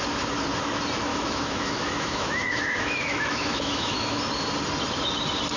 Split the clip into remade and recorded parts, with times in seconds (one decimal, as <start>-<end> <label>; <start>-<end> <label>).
0.0-1.1 recorded; 1.1-4.2 remade; 4.2-5.6 recorded